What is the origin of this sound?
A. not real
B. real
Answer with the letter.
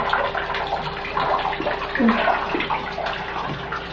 B